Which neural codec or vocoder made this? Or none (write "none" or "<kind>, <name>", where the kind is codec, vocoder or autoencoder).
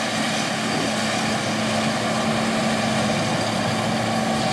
none